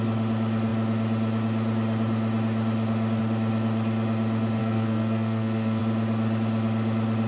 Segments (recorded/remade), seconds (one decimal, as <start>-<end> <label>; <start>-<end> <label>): 0.0-4.6 recorded; 4.6-5.8 remade; 5.8-7.3 recorded